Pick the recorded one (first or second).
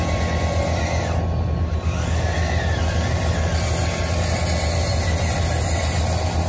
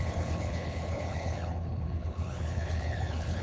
first